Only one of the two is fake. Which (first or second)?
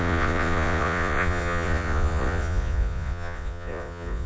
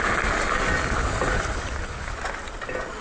first